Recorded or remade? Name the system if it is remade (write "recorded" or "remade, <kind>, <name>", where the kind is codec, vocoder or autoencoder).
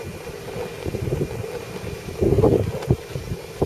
recorded